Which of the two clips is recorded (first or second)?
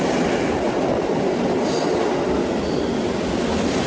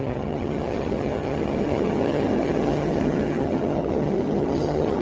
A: first